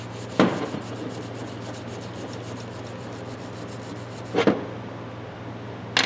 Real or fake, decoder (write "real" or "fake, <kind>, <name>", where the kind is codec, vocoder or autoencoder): real